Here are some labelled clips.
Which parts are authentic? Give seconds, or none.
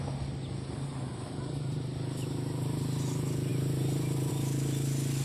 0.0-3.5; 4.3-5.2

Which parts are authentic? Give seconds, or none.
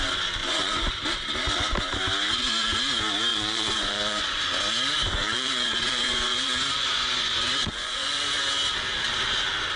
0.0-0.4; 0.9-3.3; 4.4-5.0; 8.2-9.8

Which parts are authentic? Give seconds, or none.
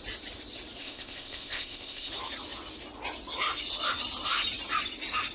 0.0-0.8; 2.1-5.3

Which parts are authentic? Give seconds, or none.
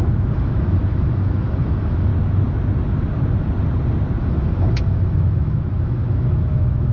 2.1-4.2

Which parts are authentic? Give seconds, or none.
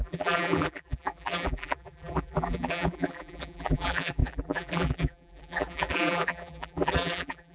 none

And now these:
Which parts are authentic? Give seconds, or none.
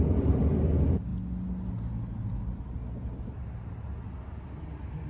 0.0-5.1